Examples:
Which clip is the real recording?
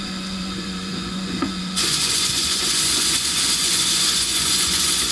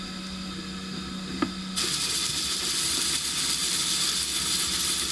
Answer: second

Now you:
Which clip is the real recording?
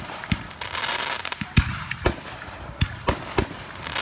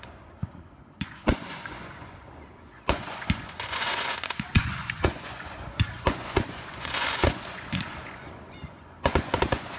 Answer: first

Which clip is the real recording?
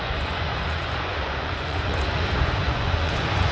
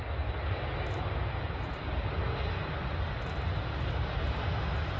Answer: second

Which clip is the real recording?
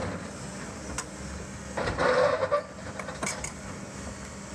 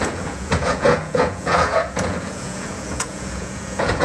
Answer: first